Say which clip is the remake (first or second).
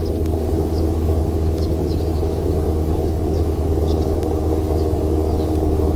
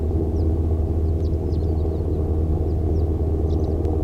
first